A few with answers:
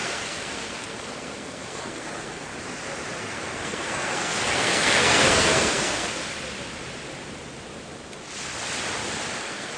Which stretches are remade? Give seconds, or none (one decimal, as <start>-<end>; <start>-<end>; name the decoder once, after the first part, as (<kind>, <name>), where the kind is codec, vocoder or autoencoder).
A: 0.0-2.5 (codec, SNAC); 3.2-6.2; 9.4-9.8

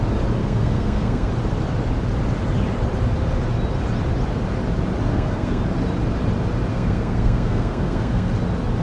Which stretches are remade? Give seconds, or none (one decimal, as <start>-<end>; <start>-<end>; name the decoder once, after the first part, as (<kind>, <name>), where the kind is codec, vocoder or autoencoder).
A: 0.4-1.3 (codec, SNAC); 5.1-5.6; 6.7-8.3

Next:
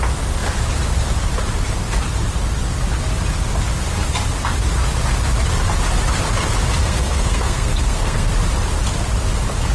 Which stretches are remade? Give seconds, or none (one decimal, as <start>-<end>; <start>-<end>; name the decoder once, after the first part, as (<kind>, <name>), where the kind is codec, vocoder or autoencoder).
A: 6.8-8.3 (codec, SNAC)